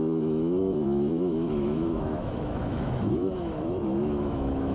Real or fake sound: fake